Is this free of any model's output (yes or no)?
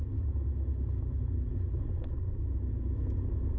yes